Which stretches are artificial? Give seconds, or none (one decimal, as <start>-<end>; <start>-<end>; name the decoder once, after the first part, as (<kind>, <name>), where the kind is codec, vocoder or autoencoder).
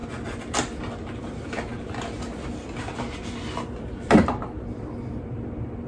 none